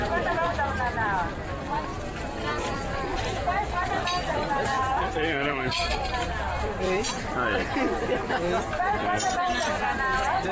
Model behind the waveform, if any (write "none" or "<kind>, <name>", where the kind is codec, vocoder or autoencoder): vocoder, BigVGAN v2